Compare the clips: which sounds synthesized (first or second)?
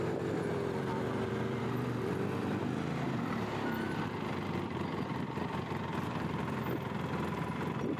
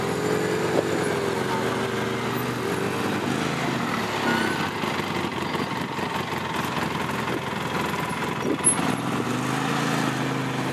first